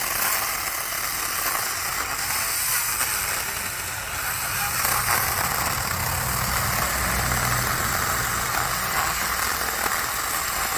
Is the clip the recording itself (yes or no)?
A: yes